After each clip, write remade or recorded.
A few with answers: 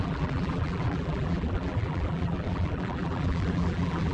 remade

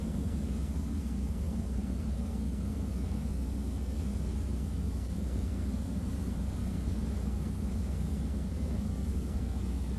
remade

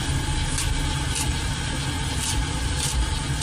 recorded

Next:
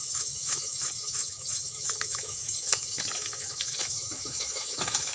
remade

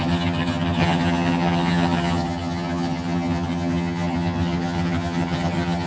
remade